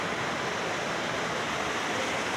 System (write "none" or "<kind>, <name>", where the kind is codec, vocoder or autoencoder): none